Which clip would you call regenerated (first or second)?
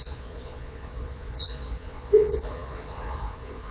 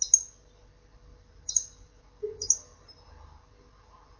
first